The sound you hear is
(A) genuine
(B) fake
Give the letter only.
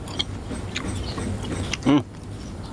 A